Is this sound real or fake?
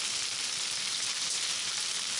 fake